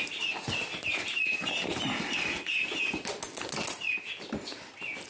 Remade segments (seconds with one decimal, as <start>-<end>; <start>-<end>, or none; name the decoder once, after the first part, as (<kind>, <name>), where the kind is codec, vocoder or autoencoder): none